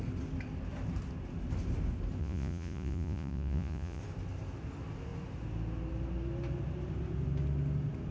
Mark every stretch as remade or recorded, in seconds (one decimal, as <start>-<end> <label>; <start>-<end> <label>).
0.0-2.2 recorded; 2.2-4.0 remade; 4.0-8.1 recorded